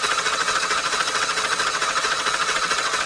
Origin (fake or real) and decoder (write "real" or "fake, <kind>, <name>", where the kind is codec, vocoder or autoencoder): fake, vocoder, WaveNeXt